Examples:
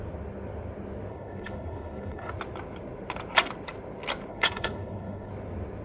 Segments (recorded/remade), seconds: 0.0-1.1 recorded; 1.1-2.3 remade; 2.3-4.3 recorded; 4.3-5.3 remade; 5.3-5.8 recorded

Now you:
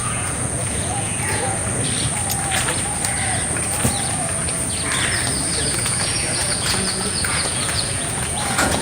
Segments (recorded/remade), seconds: 0.0-1.6 remade; 1.6-5.6 recorded; 5.6-8.8 remade

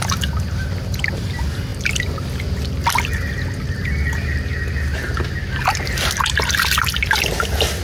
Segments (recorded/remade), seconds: 0.0-7.8 recorded

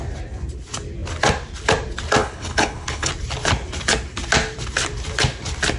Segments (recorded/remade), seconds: 0.0-2.2 recorded; 2.2-3.1 remade; 3.1-5.8 recorded

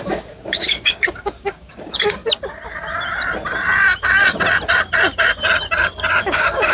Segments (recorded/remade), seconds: 0.0-2.2 remade; 2.2-6.2 recorded; 6.2-6.7 remade

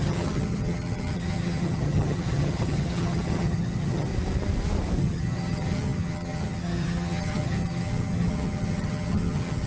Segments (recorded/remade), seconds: 0.0-4.1 remade; 4.1-5.0 recorded; 5.0-9.7 remade

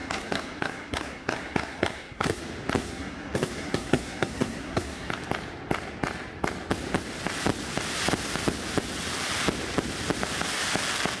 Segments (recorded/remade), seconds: 0.0-2.4 remade; 2.4-2.8 recorded; 2.8-5.1 remade; 5.1-11.2 recorded

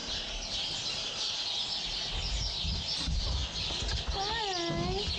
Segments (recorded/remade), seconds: 0.0-5.2 recorded